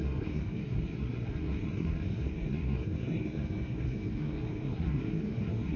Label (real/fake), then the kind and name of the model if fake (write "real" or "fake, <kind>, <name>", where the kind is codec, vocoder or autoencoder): fake, codec, SNAC